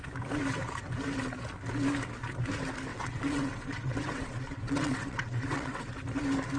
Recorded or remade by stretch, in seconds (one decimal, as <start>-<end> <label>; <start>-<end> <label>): 0.0-2.9 recorded; 2.9-5.9 remade; 5.9-6.6 recorded